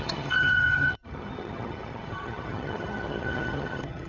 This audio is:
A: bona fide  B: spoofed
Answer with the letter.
B